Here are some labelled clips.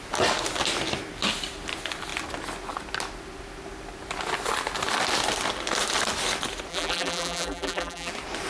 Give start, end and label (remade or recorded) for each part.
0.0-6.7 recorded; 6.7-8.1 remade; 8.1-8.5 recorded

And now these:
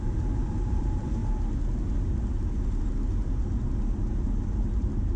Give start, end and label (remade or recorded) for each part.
0.0-1.2 remade; 1.2-4.1 recorded; 4.1-5.2 remade

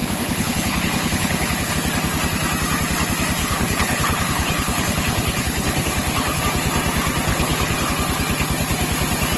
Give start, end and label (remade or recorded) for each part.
0.0-1.7 remade; 1.7-3.4 recorded; 3.4-6.4 remade; 6.4-7.3 recorded; 7.3-7.9 remade; 7.9-9.4 recorded

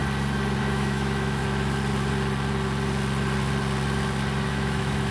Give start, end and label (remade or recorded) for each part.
0.0-0.6 recorded; 0.6-1.4 remade; 1.4-4.5 recorded; 4.5-5.1 remade

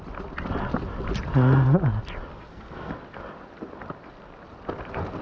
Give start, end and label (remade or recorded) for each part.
0.0-2.3 recorded; 2.3-2.9 remade; 2.9-5.2 recorded